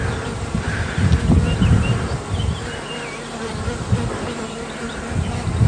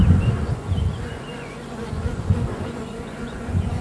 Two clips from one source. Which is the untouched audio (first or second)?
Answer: first